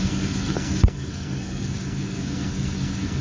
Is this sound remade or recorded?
remade